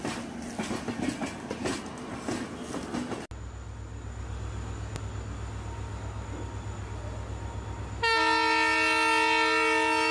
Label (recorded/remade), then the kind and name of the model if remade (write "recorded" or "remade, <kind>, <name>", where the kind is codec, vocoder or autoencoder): recorded